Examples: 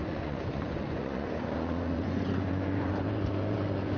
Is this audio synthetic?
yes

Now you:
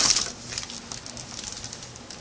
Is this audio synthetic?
no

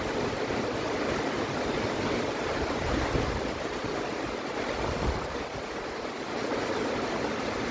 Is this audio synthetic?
no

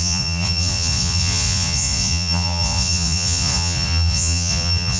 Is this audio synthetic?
yes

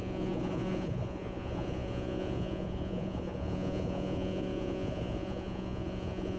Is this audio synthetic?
yes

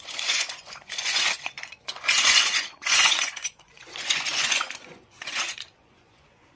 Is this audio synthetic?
yes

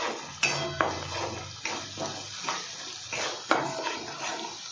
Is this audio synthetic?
no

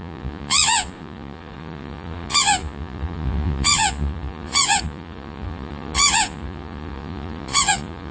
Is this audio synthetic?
yes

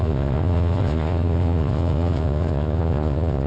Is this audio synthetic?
yes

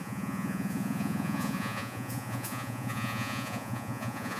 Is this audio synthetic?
yes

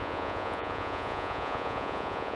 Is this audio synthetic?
yes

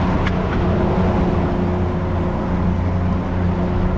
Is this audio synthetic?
no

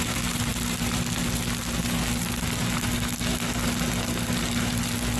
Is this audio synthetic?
no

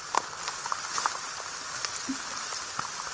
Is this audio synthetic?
no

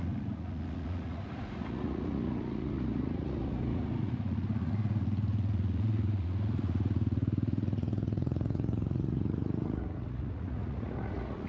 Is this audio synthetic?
yes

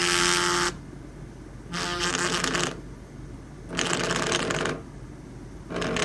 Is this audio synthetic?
no